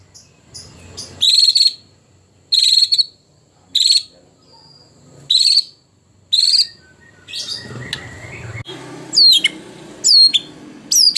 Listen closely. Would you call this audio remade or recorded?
recorded